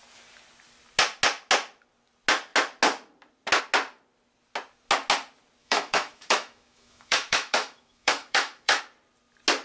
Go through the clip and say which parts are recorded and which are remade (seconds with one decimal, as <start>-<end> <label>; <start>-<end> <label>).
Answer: 0.0-5.6 recorded; 5.6-8.8 remade; 8.8-9.6 recorded